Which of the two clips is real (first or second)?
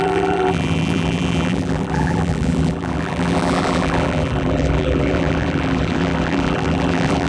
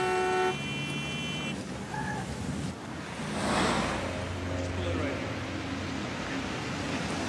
second